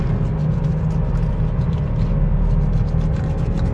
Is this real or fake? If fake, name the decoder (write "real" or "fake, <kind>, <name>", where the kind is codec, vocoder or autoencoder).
real